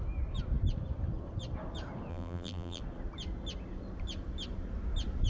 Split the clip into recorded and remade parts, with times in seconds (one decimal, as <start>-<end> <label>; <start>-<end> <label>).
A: 0.0-2.1 recorded; 2.1-2.8 remade; 2.8-5.3 recorded